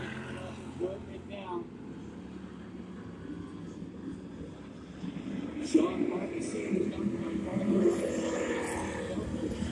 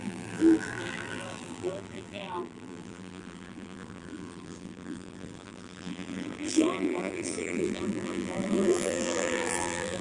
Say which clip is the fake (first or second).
second